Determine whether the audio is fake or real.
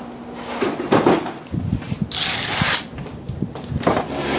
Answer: real